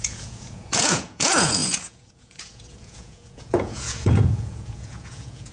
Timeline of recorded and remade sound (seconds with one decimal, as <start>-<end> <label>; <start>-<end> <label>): 0.0-5.5 remade